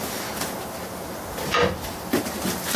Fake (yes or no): no